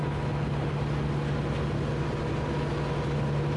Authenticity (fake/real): real